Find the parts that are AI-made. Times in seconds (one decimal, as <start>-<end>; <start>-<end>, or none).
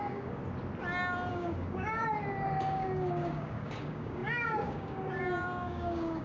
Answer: 0.0-0.4; 1.3-2.0; 2.6-6.2